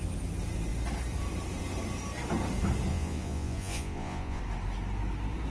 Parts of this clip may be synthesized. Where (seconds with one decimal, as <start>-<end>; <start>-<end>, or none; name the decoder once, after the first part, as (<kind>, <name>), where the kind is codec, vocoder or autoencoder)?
2.9-4.4 (vocoder, Vocos)